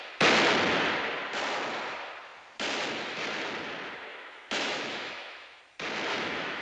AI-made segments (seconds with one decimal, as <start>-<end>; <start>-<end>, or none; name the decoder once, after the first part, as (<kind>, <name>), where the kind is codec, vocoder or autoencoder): 4.1-5.6 (autoencoder, DAC-VAE); 6.1-6.6